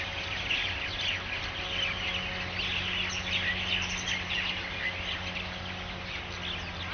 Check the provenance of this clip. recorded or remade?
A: recorded